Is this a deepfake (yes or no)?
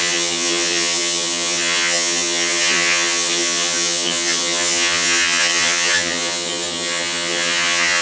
yes